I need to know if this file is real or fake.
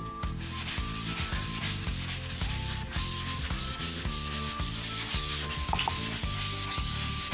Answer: real